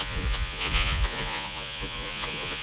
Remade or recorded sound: remade